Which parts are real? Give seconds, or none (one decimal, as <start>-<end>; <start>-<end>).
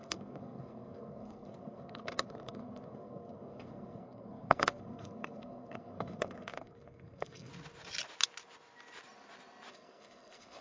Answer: 7.5-9.7